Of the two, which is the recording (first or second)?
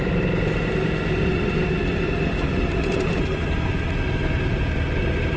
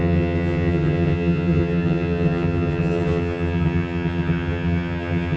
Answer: first